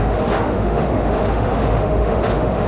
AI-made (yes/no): yes